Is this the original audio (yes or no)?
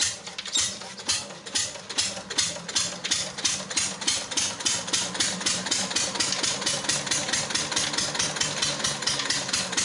yes